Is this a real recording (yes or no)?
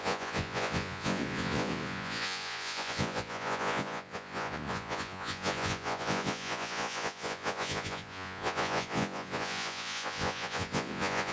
no